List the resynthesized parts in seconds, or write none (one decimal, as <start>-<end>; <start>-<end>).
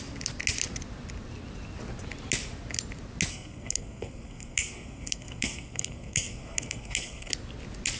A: 3.3-7.3